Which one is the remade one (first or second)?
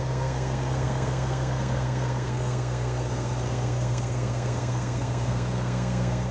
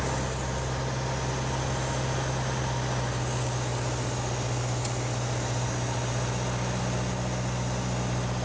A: first